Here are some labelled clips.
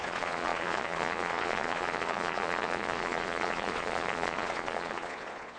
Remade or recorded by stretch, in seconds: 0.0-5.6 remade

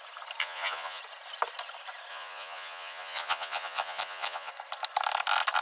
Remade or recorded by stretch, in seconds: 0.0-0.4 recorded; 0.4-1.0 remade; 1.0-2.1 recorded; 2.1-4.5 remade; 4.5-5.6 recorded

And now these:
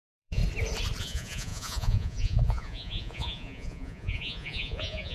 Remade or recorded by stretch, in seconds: 0.0-0.4 remade; 0.4-1.0 recorded; 1.0-5.1 remade

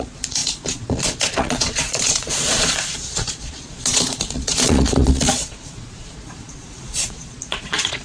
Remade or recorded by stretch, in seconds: 0.0-8.0 remade

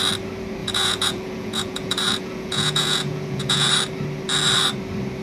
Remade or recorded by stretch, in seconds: 0.0-0.6 recorded; 0.6-3.7 remade; 3.7-5.2 recorded

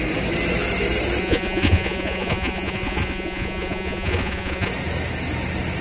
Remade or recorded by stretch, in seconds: 0.0-1.2 recorded; 1.2-4.7 remade; 4.7-5.8 recorded